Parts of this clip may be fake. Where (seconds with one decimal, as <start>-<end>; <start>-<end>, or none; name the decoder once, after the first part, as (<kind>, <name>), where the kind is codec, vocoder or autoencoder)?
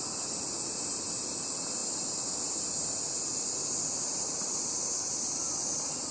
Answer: none